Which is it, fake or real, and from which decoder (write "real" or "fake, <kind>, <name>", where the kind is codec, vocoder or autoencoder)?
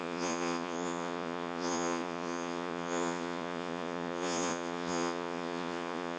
fake, vocoder, Vocos